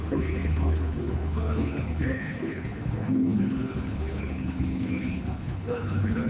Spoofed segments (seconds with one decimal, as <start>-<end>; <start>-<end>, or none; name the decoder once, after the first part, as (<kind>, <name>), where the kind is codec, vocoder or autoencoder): 0.0-6.3 (codec, HILCodec)